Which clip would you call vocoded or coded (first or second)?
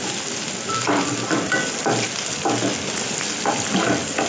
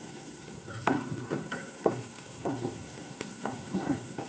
second